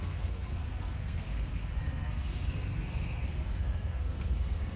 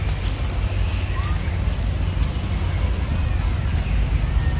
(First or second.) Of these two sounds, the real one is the second